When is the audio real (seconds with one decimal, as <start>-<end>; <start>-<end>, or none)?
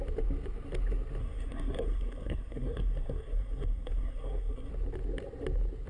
0.0-1.2; 4.7-5.9